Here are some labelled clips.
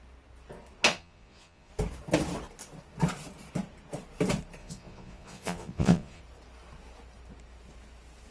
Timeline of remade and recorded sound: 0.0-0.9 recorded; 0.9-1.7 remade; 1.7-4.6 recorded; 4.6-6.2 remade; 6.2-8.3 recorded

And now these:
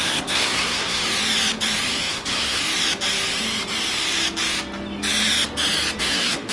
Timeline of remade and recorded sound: 0.0-1.0 remade; 1.0-2.1 recorded; 2.1-2.6 remade; 2.6-6.0 recorded; 6.0-6.5 remade

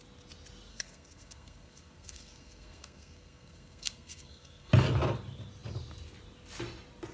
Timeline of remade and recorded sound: 0.0-0.7 recorded; 0.7-4.7 remade; 4.7-7.1 recorded

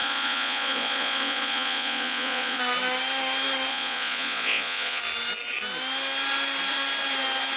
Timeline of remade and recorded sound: 0.0-2.6 remade; 2.6-3.7 recorded; 3.7-5.0 remade; 5.0-7.6 recorded

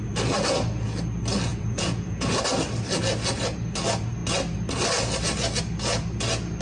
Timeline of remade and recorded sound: 0.0-1.5 recorded; 1.5-2.4 remade; 2.4-6.6 recorded

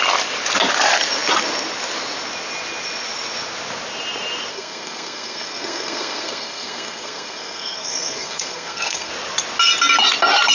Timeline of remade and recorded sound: 0.0-4.5 recorded; 4.5-9.1 remade; 9.1-10.5 recorded

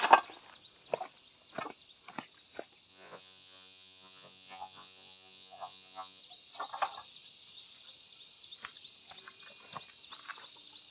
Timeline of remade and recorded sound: 0.0-2.9 recorded; 2.9-6.2 remade; 6.2-10.9 recorded

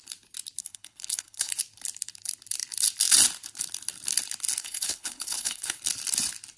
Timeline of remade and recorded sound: 0.0-0.6 recorded; 0.6-1.5 remade; 1.5-4.6 recorded; 4.6-5.8 remade; 5.8-6.6 recorded